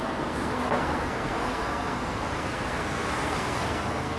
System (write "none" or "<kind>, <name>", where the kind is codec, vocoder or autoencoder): codec, SNAC